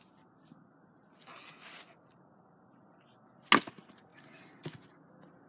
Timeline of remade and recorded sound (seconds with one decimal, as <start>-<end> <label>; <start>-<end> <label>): 0.0-5.5 recorded